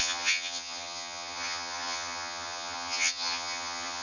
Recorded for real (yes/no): no